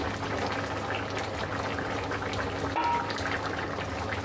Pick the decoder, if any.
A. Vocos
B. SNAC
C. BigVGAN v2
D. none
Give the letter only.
D